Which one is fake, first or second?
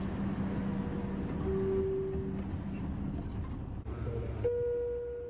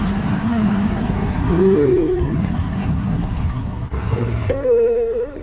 second